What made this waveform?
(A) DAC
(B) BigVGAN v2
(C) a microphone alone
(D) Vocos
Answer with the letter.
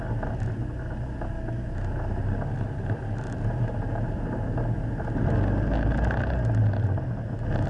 C